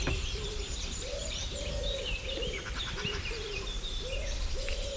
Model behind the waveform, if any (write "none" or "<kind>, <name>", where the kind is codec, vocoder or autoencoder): vocoder, BigVGAN v2